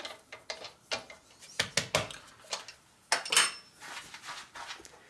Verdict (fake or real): real